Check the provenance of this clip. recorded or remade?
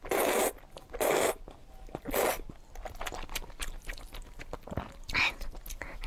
recorded